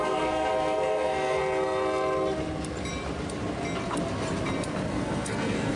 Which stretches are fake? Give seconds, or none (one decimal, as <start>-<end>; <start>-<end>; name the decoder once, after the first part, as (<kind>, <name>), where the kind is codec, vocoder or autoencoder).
0.0-1.4 (codec, SNAC); 4.9-5.8